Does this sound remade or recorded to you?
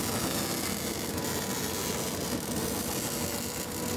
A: recorded